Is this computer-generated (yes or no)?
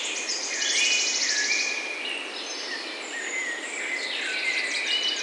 no